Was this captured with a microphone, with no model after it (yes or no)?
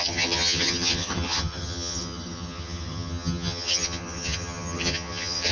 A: no